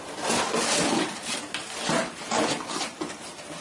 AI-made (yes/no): no